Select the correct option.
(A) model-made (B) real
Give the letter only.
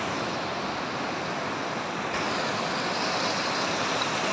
B